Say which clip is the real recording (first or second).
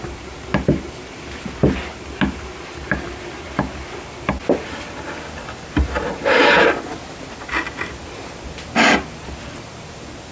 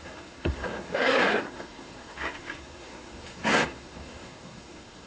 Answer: first